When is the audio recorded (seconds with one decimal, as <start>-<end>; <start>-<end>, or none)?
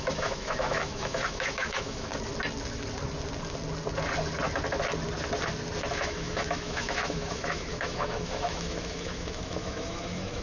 2.1-5.9